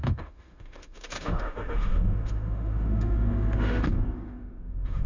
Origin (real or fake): fake